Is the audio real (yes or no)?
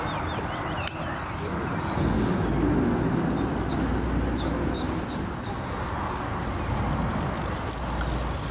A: yes